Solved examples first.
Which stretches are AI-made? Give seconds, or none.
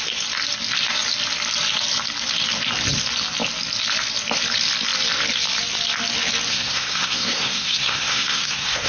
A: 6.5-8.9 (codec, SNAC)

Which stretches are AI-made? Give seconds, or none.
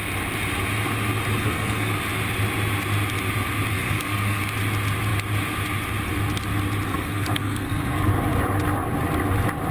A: 1.4-1.9 (codec, SNAC); 3.7-4.4; 6.9-8.0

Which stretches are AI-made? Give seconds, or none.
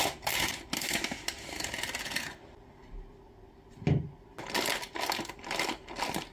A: none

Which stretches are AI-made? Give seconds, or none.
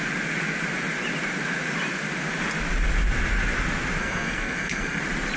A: 4.0-5.0 (codec, SNAC)